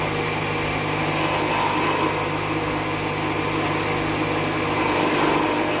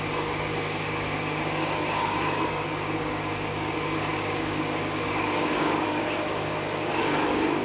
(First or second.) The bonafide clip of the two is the first